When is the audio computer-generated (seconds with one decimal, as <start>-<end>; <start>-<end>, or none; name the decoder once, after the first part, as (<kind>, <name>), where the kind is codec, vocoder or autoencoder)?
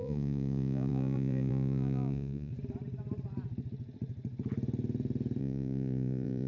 0.0-2.5 (vocoder, Vocos); 5.4-6.5